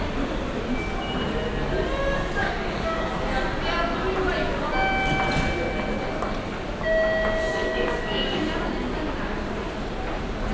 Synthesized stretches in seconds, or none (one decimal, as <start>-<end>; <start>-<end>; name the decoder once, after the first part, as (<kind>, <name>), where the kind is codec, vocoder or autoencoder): 2.4-3.1 (codec, DAC); 7.5-8.4